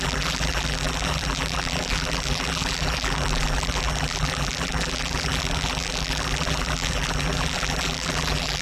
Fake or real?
fake